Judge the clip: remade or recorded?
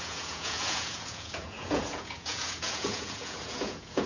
remade